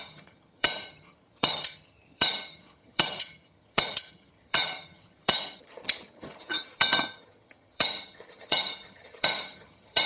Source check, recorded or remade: remade